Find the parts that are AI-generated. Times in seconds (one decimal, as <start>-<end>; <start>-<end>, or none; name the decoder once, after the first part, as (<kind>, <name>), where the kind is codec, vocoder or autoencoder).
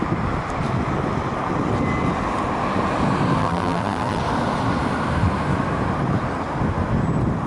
3.4-4.2 (vocoder, BigVGAN v2)